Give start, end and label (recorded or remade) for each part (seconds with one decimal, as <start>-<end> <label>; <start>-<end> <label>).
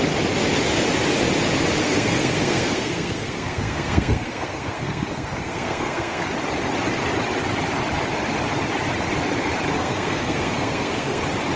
0.0-1.8 recorded; 1.8-6.2 remade; 6.2-9.8 recorded; 9.8-11.2 remade; 11.2-11.6 recorded